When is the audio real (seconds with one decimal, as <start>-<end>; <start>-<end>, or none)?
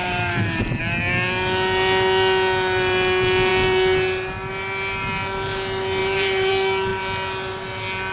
0.8-6.0; 6.5-8.1